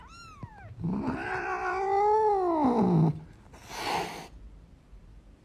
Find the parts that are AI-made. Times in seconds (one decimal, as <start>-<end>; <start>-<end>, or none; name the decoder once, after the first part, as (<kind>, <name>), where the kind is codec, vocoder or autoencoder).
none